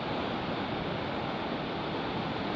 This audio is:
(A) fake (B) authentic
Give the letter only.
B